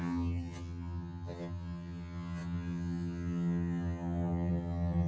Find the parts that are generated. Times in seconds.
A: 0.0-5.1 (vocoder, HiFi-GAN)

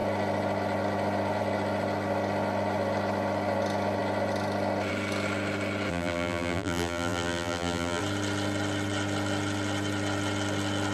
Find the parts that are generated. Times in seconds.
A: 5.9-8.0 (vocoder, BigVGAN v2)